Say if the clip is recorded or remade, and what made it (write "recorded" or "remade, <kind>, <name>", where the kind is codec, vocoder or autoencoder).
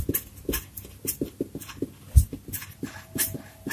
recorded